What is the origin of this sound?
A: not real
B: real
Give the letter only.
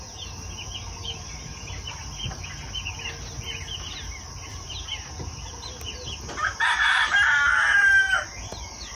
B